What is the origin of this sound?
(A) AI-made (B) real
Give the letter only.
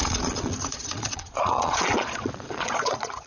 A